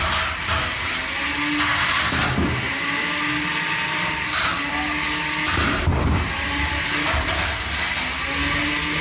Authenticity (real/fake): real